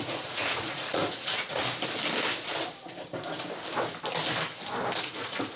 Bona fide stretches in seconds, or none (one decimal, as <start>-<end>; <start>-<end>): 1.6-5.0